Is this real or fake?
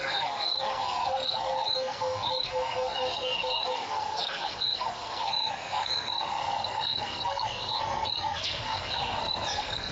fake